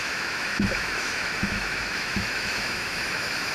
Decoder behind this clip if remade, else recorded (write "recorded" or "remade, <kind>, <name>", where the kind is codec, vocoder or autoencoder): remade, autoencoder, DAC-VAE